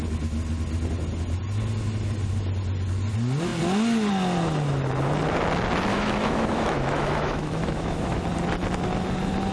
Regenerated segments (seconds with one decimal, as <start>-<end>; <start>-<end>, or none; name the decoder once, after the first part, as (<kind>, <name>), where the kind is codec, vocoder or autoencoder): 5.9-8.2 (autoencoder, DAC-VAE)